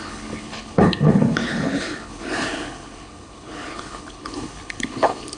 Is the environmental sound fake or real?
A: fake